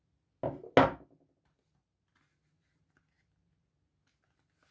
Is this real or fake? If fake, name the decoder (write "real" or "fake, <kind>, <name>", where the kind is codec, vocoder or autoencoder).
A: real